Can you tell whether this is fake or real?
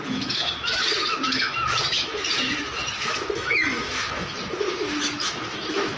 fake